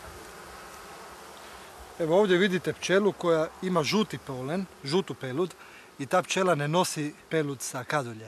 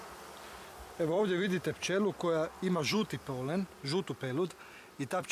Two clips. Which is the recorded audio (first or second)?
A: first